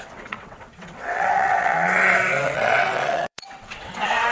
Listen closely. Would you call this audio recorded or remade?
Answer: remade